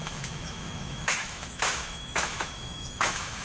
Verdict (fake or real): fake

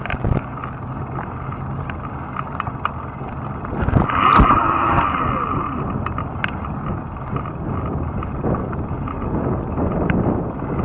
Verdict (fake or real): real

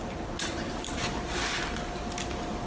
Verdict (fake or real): real